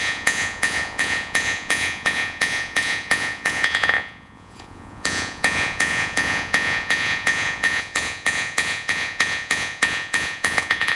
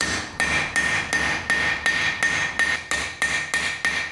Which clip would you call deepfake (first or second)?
first